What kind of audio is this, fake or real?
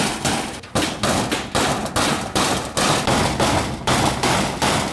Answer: real